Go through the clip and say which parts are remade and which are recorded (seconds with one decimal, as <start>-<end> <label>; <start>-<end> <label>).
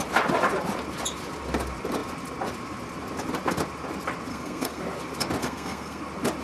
0.0-4.3 recorded; 4.3-4.8 remade; 4.8-5.4 recorded; 5.4-6.0 remade; 6.0-6.4 recorded